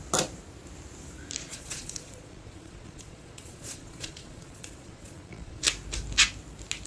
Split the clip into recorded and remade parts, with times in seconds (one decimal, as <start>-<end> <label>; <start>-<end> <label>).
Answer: 0.0-1.5 recorded; 1.5-5.6 remade; 5.6-6.9 recorded